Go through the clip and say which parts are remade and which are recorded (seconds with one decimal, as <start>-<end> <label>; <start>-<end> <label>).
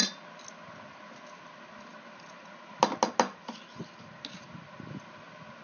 0.0-5.6 recorded